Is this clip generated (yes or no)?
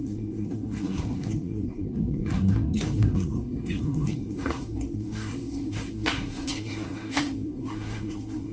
yes